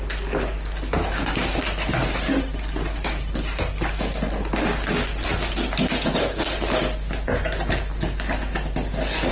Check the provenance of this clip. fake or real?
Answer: real